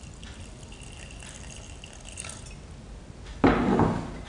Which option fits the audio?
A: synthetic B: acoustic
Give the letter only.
B